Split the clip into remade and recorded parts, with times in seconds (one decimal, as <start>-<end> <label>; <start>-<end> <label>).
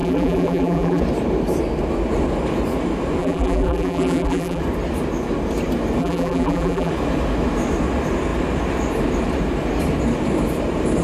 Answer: 0.0-1.0 remade; 1.0-3.2 recorded; 3.2-4.6 remade; 4.6-6.0 recorded; 6.0-6.9 remade; 6.9-11.0 recorded